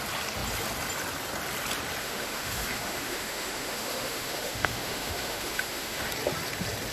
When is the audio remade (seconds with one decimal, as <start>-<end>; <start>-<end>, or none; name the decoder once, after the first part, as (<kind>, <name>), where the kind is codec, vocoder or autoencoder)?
2.0-6.1 (autoencoder, DAC-VAE)